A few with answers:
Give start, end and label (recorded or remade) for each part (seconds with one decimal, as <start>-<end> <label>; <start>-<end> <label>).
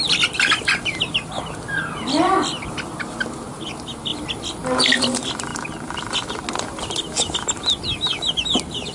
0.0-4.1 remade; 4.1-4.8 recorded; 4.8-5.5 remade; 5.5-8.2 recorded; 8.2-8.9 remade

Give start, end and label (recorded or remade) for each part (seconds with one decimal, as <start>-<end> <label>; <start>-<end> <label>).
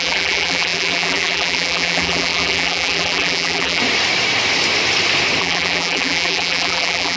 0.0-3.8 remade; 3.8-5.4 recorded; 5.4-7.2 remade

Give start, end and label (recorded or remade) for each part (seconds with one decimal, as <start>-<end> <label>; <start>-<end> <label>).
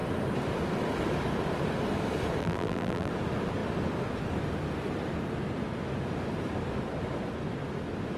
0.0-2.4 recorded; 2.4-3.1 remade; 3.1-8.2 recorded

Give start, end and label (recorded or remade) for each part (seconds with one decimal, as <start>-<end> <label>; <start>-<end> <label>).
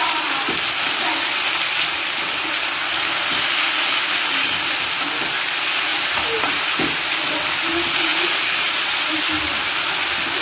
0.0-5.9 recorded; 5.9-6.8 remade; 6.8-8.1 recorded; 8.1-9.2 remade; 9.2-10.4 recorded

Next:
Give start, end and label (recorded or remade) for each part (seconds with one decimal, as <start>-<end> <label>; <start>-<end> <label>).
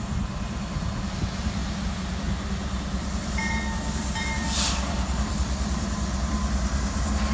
0.0-7.3 remade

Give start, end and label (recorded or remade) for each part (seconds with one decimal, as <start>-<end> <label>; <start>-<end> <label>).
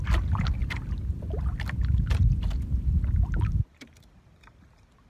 0.0-5.1 recorded